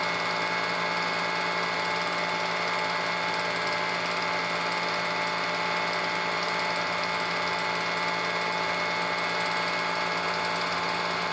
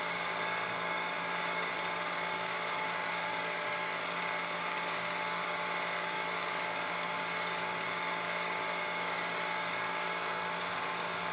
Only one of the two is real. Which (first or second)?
first